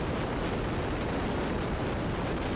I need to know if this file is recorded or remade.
recorded